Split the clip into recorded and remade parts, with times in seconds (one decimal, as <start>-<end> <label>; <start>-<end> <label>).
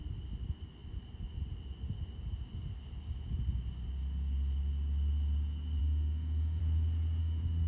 0.0-5.8 recorded; 5.8-6.6 remade; 6.6-7.2 recorded; 7.2-7.7 remade